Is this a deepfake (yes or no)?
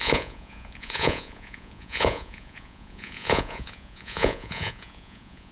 yes